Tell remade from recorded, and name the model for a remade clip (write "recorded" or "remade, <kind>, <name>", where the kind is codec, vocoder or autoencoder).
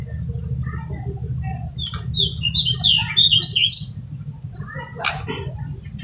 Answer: recorded